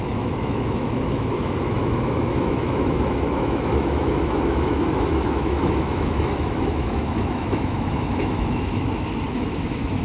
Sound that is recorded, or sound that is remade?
remade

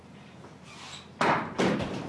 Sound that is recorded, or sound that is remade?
recorded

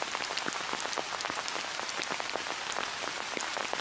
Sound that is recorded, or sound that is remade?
recorded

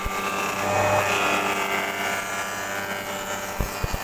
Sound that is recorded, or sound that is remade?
recorded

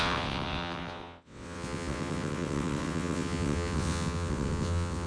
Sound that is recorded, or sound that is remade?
remade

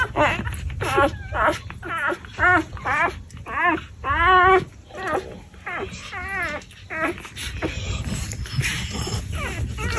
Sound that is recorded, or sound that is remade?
recorded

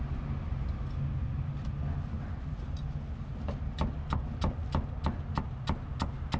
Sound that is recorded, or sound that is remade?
recorded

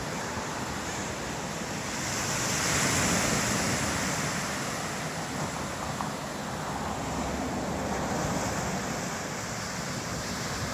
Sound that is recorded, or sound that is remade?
recorded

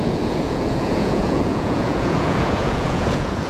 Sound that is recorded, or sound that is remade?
remade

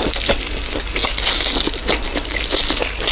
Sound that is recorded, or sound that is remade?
recorded